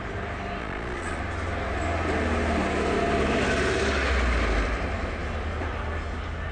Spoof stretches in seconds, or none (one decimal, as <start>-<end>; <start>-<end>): 0.6-1.2